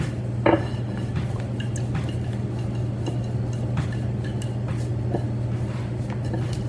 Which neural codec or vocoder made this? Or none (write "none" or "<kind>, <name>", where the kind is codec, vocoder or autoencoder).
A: none